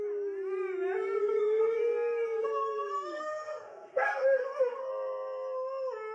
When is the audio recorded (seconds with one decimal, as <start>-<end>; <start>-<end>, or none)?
0.0-1.2; 4.9-6.1